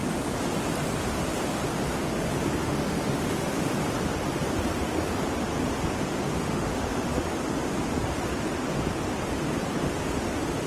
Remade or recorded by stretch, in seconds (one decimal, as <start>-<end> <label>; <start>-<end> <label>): 0.0-2.6 recorded; 2.6-3.7 remade; 3.7-6.3 recorded; 6.3-7.2 remade; 7.2-10.7 recorded